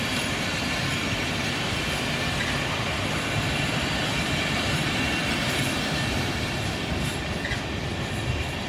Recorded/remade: remade